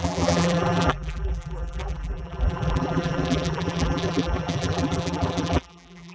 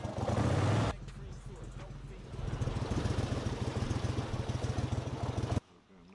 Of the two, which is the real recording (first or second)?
second